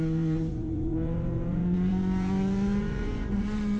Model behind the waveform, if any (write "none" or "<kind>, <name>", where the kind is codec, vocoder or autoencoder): vocoder, Vocos